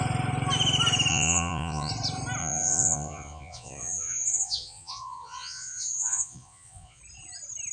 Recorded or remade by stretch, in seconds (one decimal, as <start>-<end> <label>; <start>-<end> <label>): 0.0-1.1 recorded; 1.1-1.9 remade; 1.9-2.4 recorded; 2.4-7.0 remade; 7.0-7.7 recorded